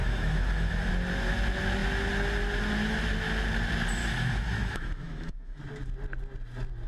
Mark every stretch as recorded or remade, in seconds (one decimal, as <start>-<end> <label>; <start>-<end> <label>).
0.0-0.9 remade; 0.9-4.0 recorded; 4.0-5.6 remade; 5.6-6.9 recorded